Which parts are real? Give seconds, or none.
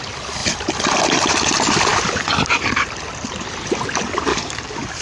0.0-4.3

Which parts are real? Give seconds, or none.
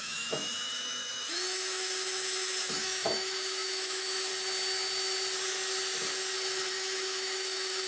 4.3-6.7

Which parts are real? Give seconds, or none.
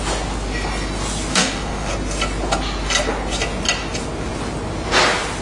0.0-1.3; 1.9-5.4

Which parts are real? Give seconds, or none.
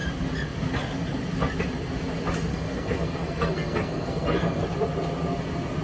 0.0-2.5; 4.6-5.8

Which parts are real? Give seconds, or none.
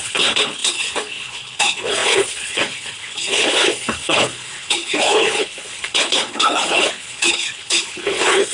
none